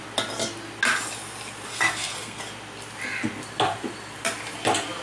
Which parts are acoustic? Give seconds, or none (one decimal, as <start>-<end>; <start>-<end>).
0.0-1.7; 2.4-5.0